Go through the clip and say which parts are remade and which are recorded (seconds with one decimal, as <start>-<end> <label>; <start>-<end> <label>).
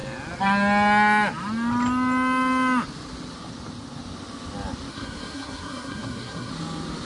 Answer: 0.0-4.9 recorded; 4.9-6.5 remade; 6.5-7.1 recorded